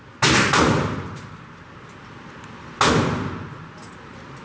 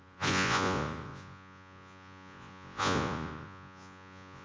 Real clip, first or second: first